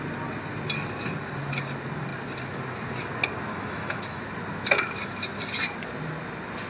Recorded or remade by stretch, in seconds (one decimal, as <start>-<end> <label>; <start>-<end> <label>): 0.0-3.5 recorded; 3.5-4.2 remade; 4.2-6.7 recorded